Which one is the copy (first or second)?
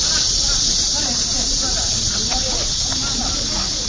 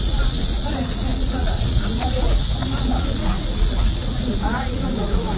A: second